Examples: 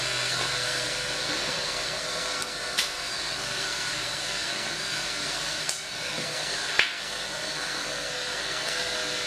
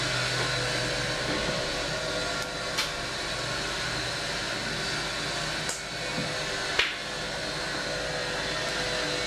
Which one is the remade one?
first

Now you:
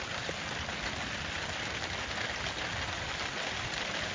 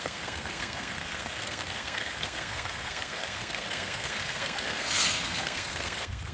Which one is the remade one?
second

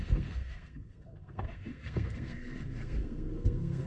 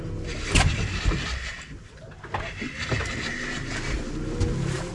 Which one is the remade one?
first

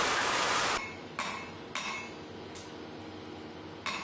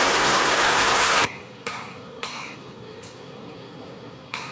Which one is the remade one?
second